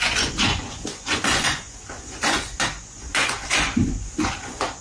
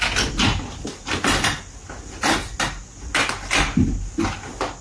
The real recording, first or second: second